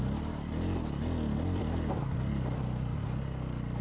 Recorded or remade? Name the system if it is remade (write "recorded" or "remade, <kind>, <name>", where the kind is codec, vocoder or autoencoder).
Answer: recorded